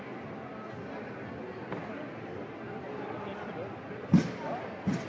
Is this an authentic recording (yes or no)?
yes